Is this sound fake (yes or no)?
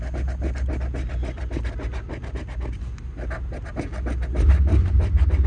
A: no